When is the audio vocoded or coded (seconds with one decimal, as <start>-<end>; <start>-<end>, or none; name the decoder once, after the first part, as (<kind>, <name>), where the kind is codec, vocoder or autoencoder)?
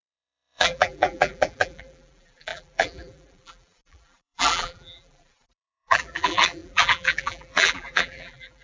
0.0-8.6 (vocoder, BigVGAN v2)